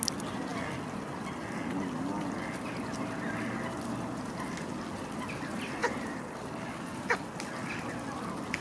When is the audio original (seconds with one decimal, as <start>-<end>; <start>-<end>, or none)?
0.0-8.6